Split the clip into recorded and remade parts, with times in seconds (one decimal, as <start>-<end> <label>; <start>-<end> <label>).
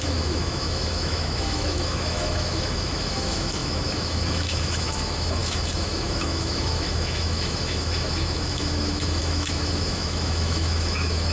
0.0-11.3 remade